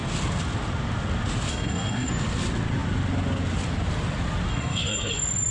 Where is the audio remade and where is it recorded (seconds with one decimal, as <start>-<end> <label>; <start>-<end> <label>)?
0.0-1.5 recorded; 1.5-2.1 remade; 2.1-4.5 recorded; 4.5-5.1 remade; 5.1-5.5 recorded